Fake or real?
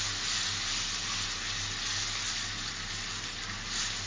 real